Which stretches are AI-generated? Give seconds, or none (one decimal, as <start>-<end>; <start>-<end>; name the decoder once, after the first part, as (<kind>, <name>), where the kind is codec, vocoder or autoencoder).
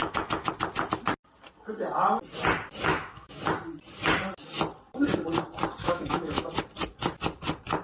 0.0-0.5 (autoencoder, DAC-VAE); 2.9-3.4; 5.8-6.5